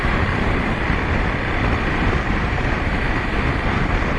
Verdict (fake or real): fake